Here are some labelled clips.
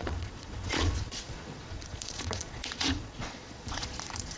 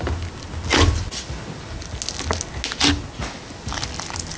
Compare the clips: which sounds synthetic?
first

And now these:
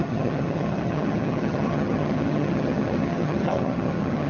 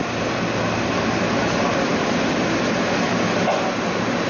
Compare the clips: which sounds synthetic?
first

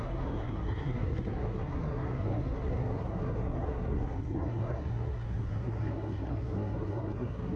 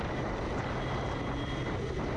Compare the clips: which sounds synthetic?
first